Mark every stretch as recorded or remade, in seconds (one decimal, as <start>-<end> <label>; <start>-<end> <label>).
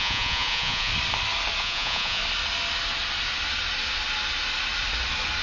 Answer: 0.0-0.9 remade; 0.9-1.6 recorded; 1.6-2.2 remade; 2.2-5.4 recorded